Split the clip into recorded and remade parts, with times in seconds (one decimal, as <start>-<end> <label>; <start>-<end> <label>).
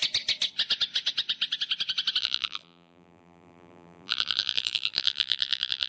0.0-2.2 recorded; 2.2-5.9 remade